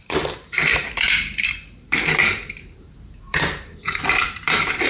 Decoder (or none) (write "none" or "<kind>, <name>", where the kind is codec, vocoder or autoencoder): vocoder, BigVGAN v2